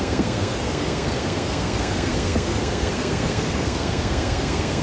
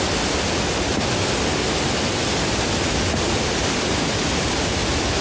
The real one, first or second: second